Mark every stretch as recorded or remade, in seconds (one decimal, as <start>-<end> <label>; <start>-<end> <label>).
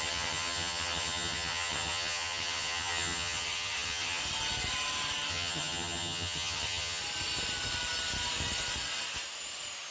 0.0-4.2 remade; 4.2-5.3 recorded; 5.3-7.0 remade; 7.0-9.9 recorded